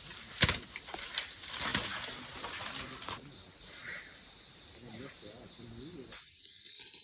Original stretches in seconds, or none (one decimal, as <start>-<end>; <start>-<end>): 0.0-7.0